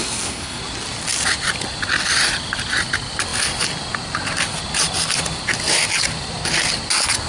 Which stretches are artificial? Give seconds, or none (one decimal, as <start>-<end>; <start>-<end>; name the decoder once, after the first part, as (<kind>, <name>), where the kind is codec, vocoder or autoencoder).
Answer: 0.0-0.6 (codec, SNAC)